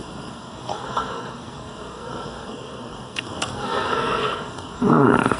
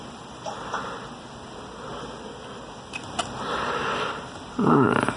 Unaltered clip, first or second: second